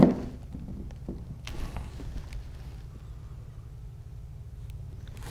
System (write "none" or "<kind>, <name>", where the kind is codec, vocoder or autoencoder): none